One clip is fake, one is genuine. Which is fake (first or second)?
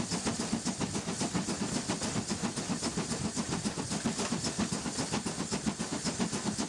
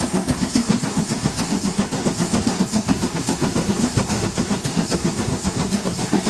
second